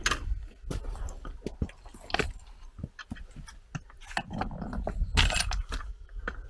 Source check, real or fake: real